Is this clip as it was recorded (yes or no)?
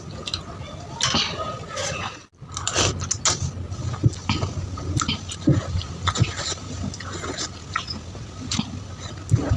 yes